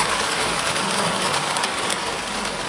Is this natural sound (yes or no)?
no